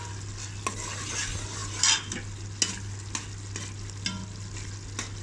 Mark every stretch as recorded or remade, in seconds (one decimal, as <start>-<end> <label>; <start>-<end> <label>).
0.0-5.2 recorded